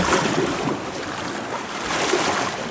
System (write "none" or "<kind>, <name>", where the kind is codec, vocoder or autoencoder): none